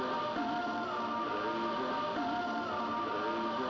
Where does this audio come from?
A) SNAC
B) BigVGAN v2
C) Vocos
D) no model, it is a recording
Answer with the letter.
D